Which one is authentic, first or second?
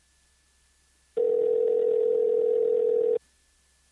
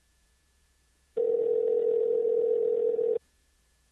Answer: first